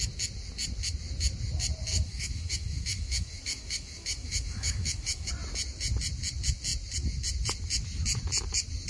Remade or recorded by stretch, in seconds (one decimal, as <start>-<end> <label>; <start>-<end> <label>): 0.0-1.9 recorded; 1.9-5.3 remade; 5.3-8.9 recorded